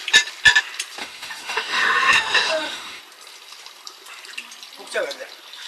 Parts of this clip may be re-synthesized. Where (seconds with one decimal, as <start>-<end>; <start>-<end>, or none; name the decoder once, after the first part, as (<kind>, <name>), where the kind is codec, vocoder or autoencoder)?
1.0-3.0 (autoencoder, DAC-VAE)